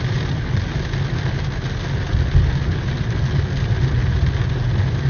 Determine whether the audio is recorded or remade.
recorded